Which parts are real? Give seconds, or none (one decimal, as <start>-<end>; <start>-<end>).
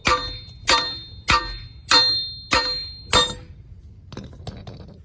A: 0.0-5.0